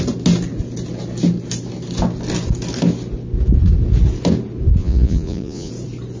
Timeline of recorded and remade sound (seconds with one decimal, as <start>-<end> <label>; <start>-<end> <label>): 0.0-4.8 recorded; 4.8-5.7 remade; 5.7-6.2 recorded